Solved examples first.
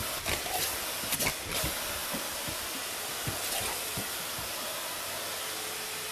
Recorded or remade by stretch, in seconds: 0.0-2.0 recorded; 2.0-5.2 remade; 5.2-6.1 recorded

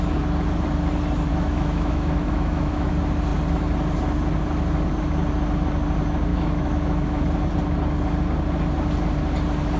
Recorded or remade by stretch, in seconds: 0.0-1.3 recorded; 1.3-2.9 remade; 2.9-6.3 recorded; 6.3-7.2 remade; 7.2-9.8 recorded

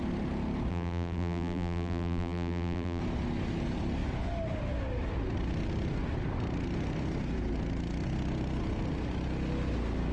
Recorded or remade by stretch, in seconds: 0.0-0.7 recorded; 0.7-3.0 remade; 3.0-10.1 recorded

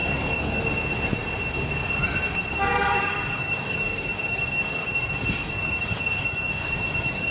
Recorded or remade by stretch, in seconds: 0.0-0.6 remade; 0.6-2.5 recorded; 2.5-7.3 remade